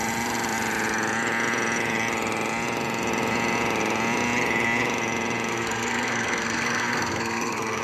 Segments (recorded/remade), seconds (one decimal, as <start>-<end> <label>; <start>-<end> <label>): 0.0-5.5 recorded; 5.5-7.8 remade